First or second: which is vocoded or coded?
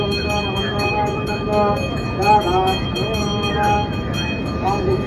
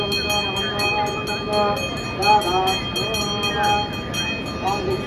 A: first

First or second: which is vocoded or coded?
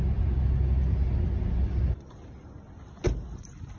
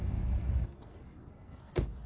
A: second